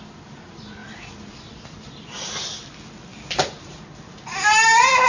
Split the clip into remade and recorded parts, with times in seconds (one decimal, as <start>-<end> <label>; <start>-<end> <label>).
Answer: 0.0-5.1 recorded